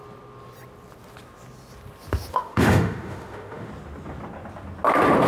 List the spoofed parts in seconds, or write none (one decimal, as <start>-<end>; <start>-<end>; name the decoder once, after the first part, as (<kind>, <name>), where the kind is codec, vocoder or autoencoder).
2.3-3.7 (autoencoder, DAC-VAE)